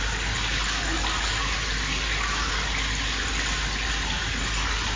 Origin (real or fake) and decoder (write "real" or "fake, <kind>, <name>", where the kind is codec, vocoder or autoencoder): real